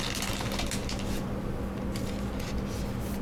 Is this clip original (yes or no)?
yes